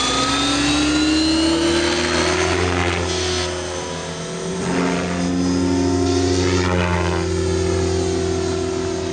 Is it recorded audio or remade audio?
recorded